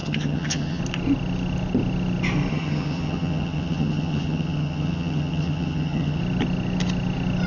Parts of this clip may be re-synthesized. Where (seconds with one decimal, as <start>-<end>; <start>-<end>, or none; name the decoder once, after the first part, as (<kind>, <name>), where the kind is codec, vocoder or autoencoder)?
0.0-0.8 (vocoder, HiFi-GAN); 2.5-6.2